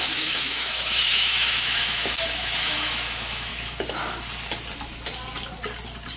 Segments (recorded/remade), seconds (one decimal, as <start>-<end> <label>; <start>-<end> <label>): 0.0-3.5 remade; 3.5-6.2 recorded